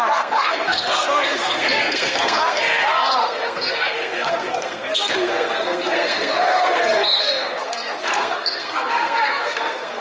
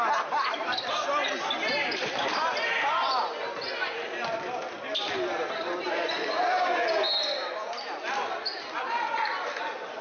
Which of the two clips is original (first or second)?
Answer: second